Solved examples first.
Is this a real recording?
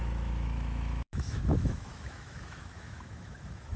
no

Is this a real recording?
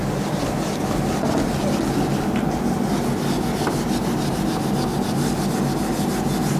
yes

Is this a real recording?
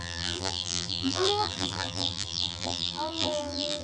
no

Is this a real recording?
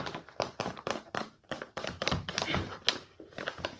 no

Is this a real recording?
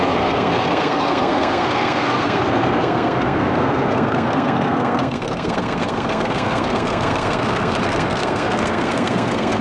no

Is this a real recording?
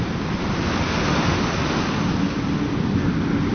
yes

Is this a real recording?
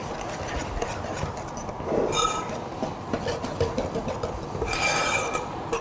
yes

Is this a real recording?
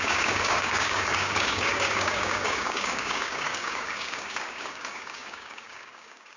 no